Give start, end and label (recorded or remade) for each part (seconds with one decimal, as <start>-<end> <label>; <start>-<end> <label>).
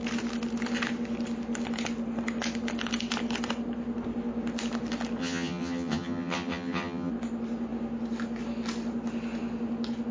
0.0-5.2 recorded; 5.2-7.1 remade; 7.1-10.1 recorded